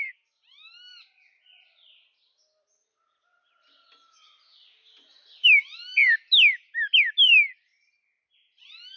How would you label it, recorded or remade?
recorded